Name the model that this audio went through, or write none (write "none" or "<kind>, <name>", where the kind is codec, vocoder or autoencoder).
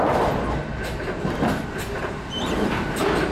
none